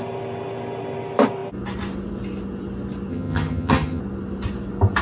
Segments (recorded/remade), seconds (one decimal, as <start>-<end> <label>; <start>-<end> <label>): 0.0-3.1 recorded; 3.1-4.0 remade; 4.0-5.0 recorded